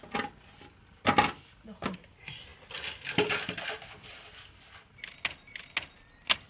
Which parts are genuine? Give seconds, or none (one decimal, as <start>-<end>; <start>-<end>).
0.0-6.5